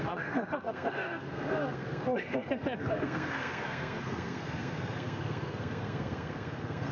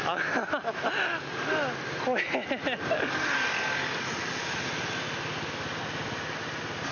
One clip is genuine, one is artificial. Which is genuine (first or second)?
second